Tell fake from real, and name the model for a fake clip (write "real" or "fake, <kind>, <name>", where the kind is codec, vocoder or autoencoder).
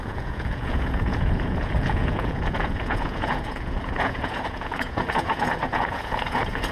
fake, vocoder, Vocos